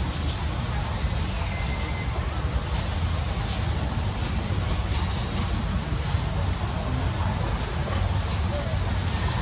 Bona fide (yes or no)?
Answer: yes